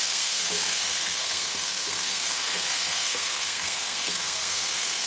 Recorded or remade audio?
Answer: remade